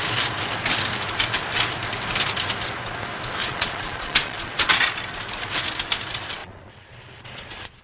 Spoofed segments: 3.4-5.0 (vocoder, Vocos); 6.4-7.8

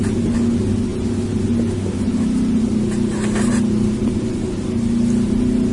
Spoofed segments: none

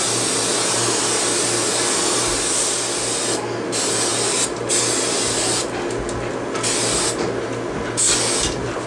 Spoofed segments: none

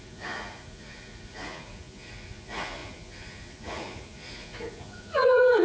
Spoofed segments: 0.0-5.6 (vocoder, Vocos)

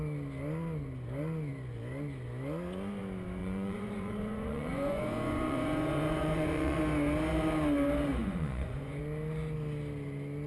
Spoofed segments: 3.4-6.8 (vocoder, Vocos); 8.1-9.0

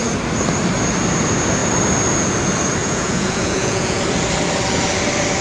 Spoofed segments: 2.8-4.0 (vocoder, Vocos)

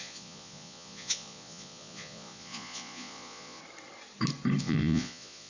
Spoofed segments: 0.0-3.6 (vocoder, Vocos); 4.6-5.5